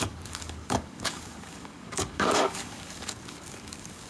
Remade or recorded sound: remade